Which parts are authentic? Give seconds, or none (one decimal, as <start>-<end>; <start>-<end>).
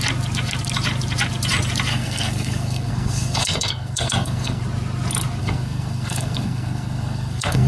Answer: 0.0-1.9; 4.6-5.4